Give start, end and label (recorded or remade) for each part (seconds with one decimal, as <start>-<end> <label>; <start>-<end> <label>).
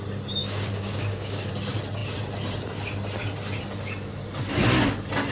0.0-0.4 recorded; 0.4-1.5 remade; 1.5-5.3 recorded